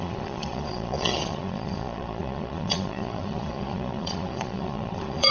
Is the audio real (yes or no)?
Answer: no